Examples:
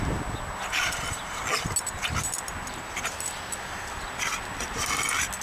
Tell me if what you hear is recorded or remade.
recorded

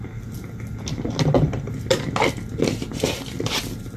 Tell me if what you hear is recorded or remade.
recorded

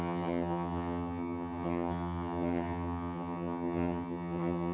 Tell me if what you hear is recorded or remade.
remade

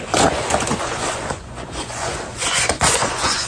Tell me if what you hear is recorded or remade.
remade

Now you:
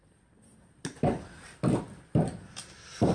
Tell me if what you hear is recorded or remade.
recorded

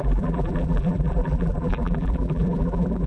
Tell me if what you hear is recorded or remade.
remade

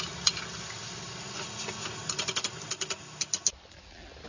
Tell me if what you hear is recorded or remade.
recorded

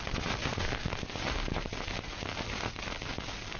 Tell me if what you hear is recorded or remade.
recorded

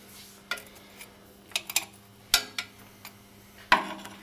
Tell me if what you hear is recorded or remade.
recorded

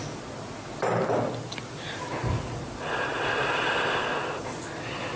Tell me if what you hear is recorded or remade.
recorded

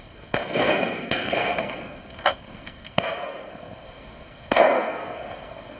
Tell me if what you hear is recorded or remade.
remade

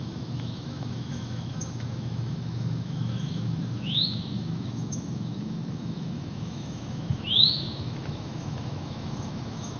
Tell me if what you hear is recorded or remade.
remade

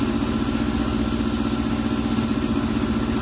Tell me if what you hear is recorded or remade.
recorded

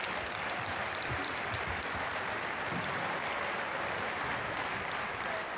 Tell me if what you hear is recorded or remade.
recorded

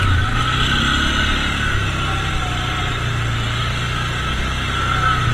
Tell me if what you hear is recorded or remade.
recorded